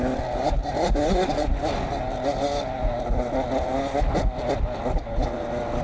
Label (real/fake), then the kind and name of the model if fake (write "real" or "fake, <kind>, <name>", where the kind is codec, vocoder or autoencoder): real